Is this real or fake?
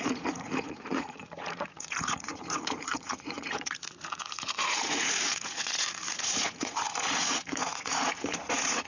fake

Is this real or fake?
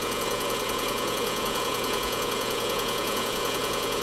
fake